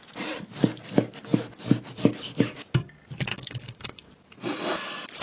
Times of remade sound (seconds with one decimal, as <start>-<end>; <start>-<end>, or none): 3.3-4.1